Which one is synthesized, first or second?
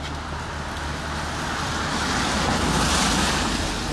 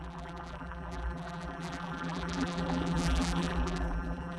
second